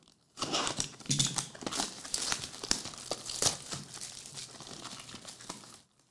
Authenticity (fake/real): real